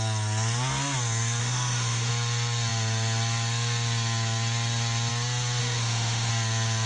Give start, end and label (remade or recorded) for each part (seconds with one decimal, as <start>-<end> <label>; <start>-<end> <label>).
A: 0.0-1.4 recorded; 1.4-2.1 remade; 2.1-5.6 recorded; 5.6-6.3 remade; 6.3-6.9 recorded